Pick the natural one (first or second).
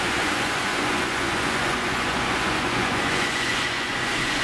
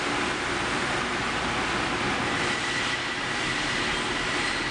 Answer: second